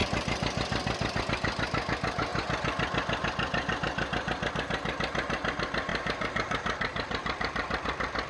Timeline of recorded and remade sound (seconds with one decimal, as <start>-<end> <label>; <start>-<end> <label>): 0.0-5.9 recorded; 5.9-8.3 remade